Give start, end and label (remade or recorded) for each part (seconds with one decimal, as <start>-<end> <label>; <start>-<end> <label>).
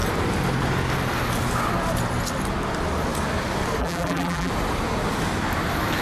0.0-3.8 recorded; 3.8-4.5 remade; 4.5-6.0 recorded